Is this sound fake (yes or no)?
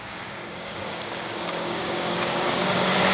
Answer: yes